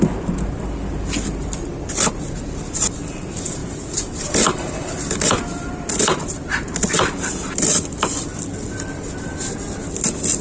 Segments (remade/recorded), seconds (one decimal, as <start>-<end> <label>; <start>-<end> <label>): 0.0-3.6 recorded; 3.6-5.9 remade; 5.9-10.4 recorded